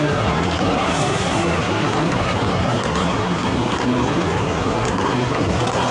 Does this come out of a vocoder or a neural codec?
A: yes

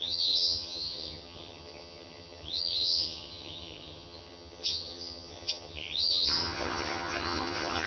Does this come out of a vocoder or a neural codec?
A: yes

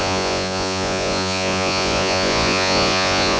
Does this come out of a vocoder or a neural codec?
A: yes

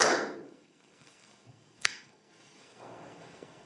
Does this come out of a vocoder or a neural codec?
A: yes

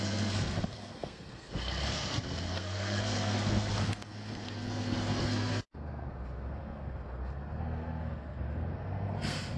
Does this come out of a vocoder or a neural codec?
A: yes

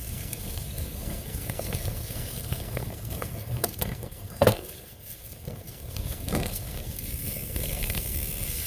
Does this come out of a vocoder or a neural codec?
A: yes